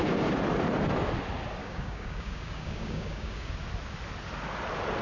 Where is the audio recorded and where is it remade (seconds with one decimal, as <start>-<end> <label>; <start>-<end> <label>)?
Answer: 0.0-1.6 recorded; 1.6-3.5 remade; 3.5-5.0 recorded